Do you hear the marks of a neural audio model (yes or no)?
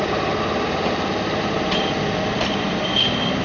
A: no